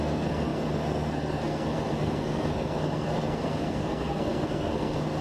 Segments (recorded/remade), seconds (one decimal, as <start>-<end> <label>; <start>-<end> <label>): 0.0-5.2 remade